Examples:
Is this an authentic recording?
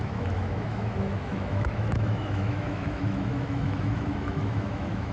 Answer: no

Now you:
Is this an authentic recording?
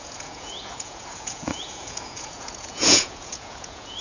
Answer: no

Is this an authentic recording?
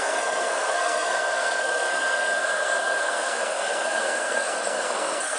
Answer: no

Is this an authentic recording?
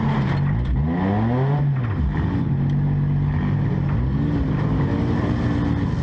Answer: yes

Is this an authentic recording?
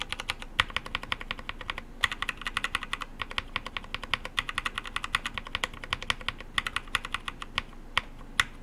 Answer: yes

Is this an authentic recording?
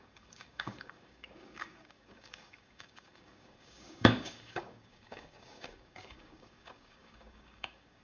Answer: no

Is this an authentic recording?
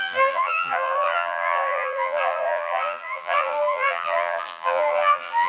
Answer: no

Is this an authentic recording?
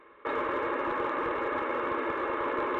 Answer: no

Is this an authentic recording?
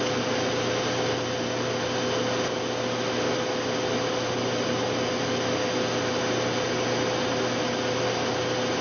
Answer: yes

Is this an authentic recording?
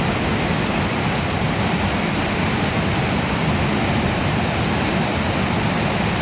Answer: yes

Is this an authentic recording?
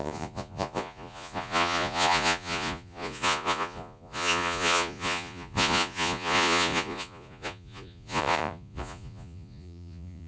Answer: no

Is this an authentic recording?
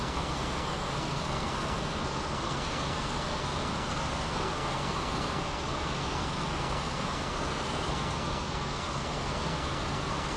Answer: no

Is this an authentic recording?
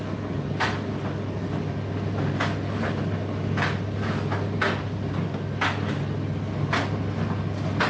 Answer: yes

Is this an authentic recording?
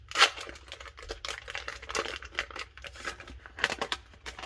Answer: yes